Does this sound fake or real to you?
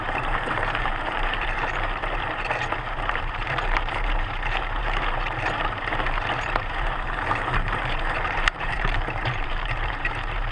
fake